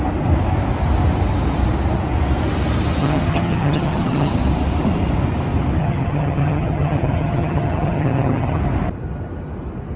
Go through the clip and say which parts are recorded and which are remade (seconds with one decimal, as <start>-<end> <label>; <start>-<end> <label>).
0.0-3.0 recorded; 3.0-4.3 remade; 4.3-5.8 recorded; 5.8-8.6 remade; 8.6-10.0 recorded